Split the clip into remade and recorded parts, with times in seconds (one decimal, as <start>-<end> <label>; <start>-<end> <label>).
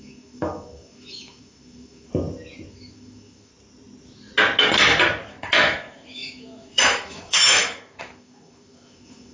0.0-2.1 remade; 2.1-2.7 recorded; 2.7-3.5 remade; 3.5-5.3 recorded; 5.3-9.3 remade